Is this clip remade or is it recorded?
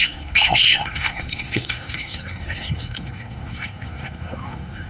remade